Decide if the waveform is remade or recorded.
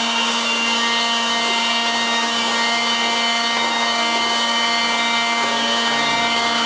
remade